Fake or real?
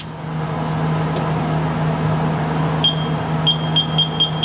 real